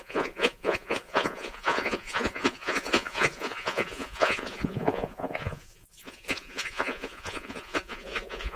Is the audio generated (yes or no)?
yes